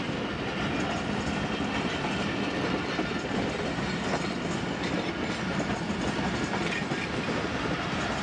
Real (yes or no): yes